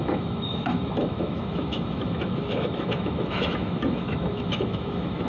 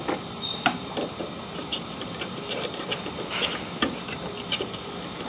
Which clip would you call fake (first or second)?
first